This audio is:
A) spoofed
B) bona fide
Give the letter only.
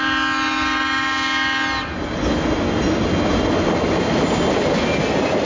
B